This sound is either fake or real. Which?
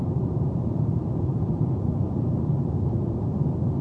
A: fake